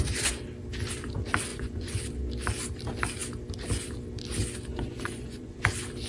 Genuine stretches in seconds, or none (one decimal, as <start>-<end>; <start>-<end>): 0.0-1.5; 2.0-4.7; 5.6-6.1